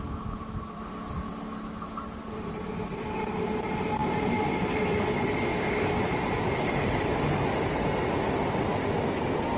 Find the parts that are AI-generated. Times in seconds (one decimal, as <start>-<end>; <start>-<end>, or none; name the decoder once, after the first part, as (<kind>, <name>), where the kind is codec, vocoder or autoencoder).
0.0-8.7 (vocoder, BigVGAN v2)

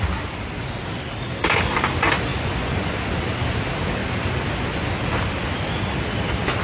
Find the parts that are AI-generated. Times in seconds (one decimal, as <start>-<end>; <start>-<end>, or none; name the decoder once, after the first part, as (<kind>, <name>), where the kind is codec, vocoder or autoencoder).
2.3-2.9 (vocoder, Vocos)

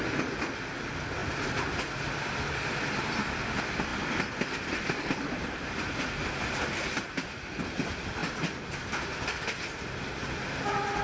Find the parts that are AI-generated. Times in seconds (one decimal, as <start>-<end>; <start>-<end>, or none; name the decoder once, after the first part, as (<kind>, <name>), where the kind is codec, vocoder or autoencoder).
none

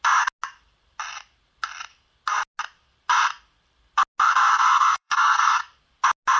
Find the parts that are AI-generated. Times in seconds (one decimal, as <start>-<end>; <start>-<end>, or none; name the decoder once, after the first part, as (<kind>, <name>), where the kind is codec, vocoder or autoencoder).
4.5-5.6 (codec, SNAC)